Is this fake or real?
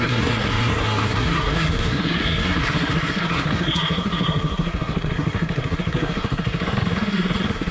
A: fake